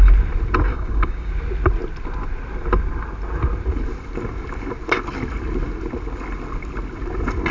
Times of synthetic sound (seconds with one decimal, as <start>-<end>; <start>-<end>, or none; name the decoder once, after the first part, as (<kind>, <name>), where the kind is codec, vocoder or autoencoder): 0.7-1.3 (codec, DAC)

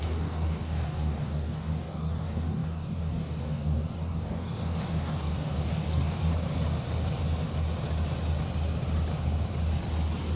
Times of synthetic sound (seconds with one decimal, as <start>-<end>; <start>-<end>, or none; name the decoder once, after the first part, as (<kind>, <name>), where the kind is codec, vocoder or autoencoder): 0.0-6.3 (codec, DAC)